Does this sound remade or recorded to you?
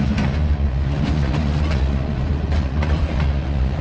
remade